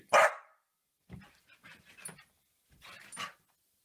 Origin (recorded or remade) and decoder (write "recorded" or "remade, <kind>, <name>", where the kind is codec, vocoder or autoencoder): recorded